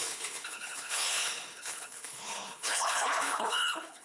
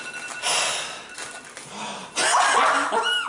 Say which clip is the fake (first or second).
first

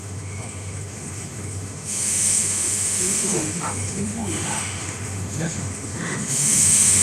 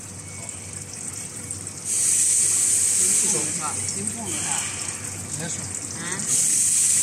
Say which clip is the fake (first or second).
first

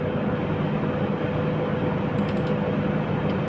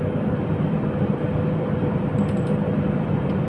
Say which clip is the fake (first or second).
second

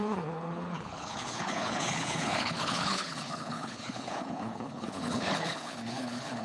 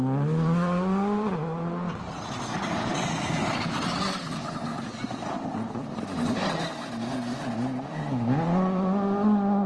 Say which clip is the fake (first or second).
first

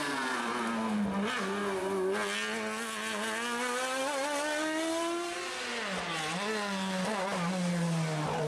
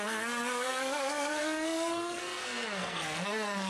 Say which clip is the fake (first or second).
second